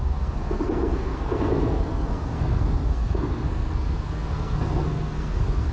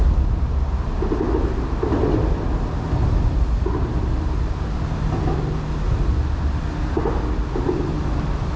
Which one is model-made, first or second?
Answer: first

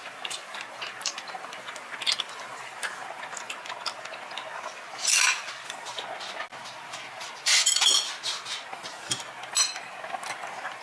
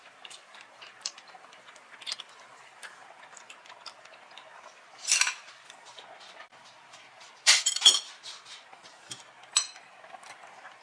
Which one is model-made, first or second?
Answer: second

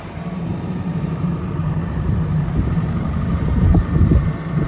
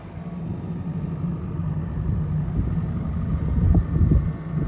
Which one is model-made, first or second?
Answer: first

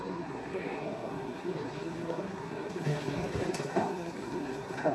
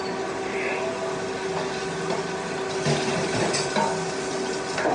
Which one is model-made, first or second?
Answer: first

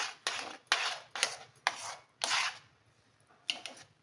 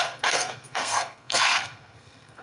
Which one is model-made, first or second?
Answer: second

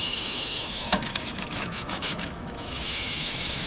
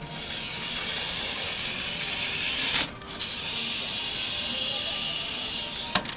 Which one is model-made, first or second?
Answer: first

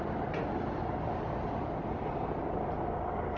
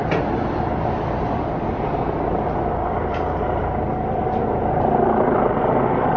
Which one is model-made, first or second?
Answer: first